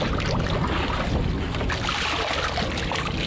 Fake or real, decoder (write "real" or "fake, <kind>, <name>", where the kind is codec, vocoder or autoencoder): real